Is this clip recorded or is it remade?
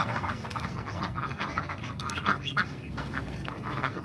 remade